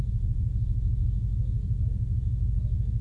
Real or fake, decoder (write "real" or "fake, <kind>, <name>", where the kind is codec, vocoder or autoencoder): real